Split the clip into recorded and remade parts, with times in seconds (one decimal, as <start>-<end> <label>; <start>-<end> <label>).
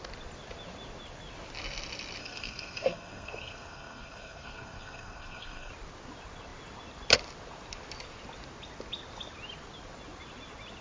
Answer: 0.0-2.2 recorded; 2.2-5.7 remade; 5.7-10.8 recorded